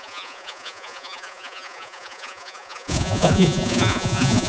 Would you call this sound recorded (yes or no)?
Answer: no